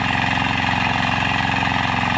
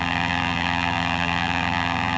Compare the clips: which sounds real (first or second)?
first